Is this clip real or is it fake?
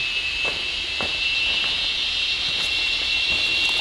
real